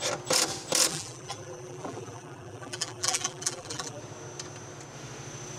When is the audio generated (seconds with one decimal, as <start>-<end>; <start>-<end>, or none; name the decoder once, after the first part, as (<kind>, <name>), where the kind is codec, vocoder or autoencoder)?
0.9-4.0 (vocoder, BigVGAN v2)